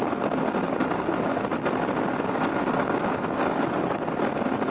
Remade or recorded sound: recorded